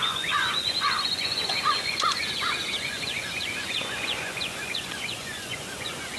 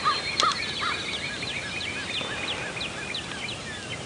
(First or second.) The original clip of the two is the second